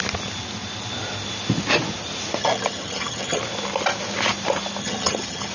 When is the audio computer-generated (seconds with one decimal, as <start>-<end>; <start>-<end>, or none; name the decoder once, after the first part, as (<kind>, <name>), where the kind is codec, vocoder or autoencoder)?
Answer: 2.4-3.4 (vocoder, HiFi-GAN); 4.8-5.5